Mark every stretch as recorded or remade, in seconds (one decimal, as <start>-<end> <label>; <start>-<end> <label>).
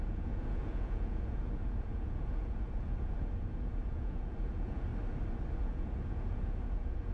0.0-4.9 remade; 4.9-5.6 recorded; 5.6-7.1 remade